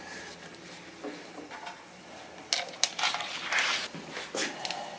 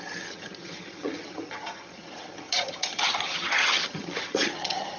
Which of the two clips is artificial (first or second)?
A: second